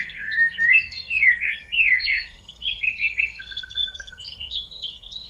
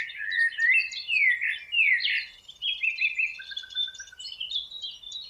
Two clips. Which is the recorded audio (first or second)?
second